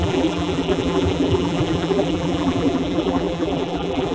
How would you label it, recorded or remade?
remade